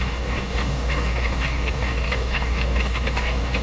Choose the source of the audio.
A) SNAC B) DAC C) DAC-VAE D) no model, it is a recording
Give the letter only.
B